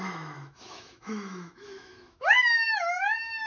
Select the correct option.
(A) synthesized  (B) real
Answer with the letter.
A